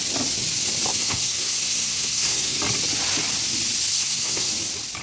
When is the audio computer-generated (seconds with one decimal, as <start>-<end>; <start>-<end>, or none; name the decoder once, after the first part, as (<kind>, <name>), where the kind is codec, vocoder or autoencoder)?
0.9-2.6 (codec, SNAC); 3.9-4.5